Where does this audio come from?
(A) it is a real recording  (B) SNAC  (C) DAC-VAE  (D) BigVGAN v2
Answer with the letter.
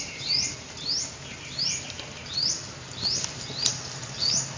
D